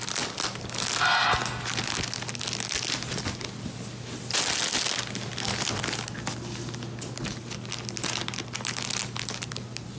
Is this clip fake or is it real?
real